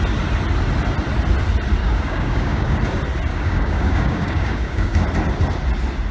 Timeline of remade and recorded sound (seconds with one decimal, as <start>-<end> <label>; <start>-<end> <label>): 0.0-1.8 recorded; 1.8-2.8 remade; 2.8-3.3 recorded; 3.3-5.0 remade; 5.0-6.1 recorded